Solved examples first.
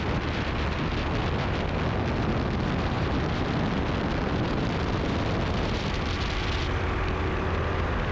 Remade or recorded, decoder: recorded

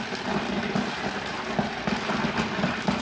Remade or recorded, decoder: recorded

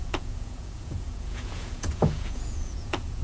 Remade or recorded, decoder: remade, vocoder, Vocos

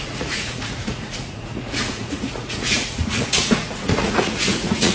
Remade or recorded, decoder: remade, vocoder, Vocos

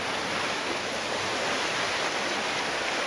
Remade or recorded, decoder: recorded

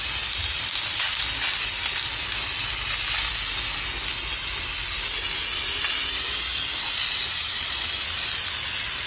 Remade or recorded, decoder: recorded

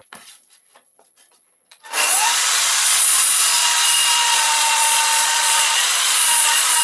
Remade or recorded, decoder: remade, vocoder, Vocos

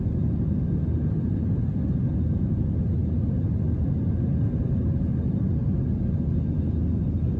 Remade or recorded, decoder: recorded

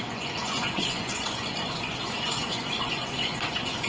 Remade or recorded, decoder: remade, vocoder, Vocos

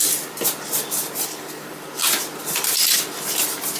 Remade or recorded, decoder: recorded